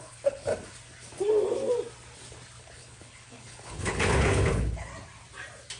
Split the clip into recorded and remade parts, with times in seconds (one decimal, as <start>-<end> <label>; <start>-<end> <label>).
0.0-0.5 remade; 0.5-2.6 recorded; 2.6-4.9 remade; 4.9-5.8 recorded